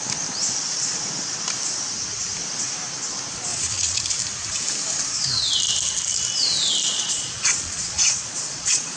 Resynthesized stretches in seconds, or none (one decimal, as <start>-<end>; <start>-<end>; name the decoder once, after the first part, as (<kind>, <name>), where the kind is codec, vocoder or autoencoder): 3.5-4.0 (vocoder, Vocos); 6.9-9.0

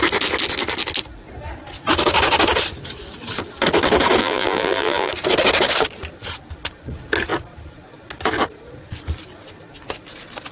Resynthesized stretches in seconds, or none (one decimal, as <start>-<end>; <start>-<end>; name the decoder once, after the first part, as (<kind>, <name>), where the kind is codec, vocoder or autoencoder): 4.2-5.1 (vocoder, BigVGAN v2)

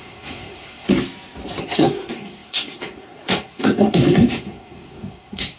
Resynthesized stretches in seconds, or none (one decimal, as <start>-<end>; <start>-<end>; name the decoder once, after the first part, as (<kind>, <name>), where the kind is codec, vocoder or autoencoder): 0.0-0.9 (codec, SNAC); 1.6-5.6

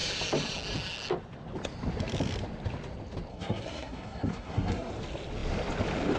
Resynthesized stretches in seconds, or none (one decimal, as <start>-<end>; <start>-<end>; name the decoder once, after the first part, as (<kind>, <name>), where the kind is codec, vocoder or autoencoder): 3.3-4.9 (codec, SNAC)

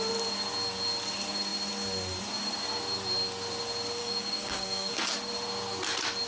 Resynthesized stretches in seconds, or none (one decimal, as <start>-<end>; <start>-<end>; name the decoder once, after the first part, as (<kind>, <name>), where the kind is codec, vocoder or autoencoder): 4.0-4.9 (codec, DAC)

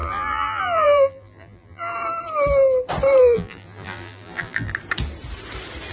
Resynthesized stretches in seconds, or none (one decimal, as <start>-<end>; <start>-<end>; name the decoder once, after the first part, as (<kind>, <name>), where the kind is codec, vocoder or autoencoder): 0.0-1.9 (vocoder, BigVGAN v2); 3.2-4.7

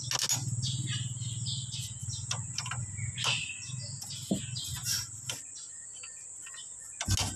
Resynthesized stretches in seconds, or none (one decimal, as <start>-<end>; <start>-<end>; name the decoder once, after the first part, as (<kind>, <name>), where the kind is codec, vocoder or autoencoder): 2.0-2.6 (vocoder, BigVGAN v2); 4.8-5.4